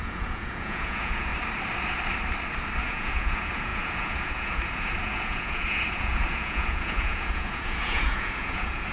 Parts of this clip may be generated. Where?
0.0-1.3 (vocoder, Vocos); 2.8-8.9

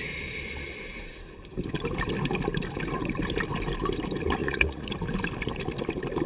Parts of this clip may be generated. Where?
4.4-4.9 (vocoder, Vocos)

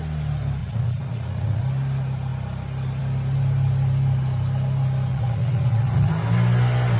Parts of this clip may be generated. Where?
0.6-1.6 (vocoder, Vocos); 5.1-6.1

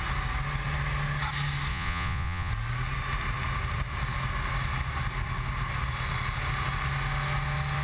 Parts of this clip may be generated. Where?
1.7-2.5 (vocoder, Vocos)

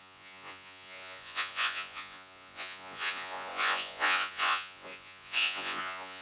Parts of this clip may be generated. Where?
0.0-6.2 (vocoder, Vocos)